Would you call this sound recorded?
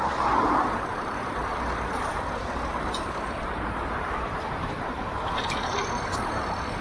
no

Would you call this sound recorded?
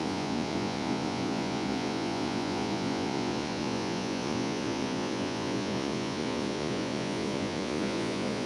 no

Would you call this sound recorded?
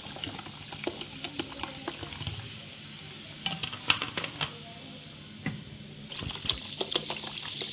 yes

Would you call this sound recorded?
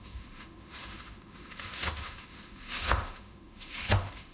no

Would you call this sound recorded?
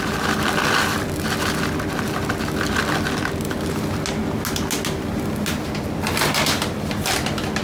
yes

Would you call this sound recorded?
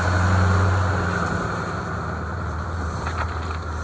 no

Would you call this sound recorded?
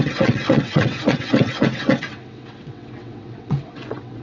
no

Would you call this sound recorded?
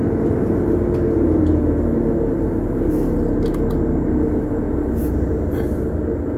yes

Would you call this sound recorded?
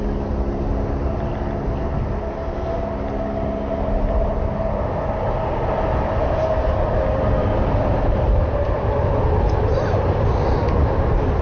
yes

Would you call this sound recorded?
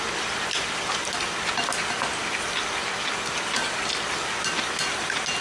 yes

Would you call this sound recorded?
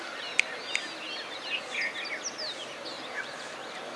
yes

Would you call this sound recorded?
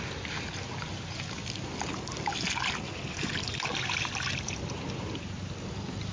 yes